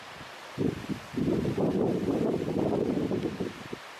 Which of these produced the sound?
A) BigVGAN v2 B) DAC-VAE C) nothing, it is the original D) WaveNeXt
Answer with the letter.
A